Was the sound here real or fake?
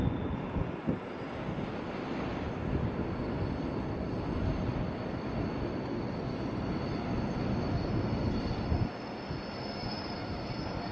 real